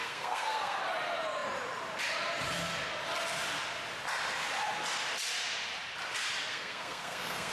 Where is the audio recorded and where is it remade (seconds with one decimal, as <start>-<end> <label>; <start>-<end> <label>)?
0.0-0.8 remade; 0.8-6.5 recorded; 6.5-7.5 remade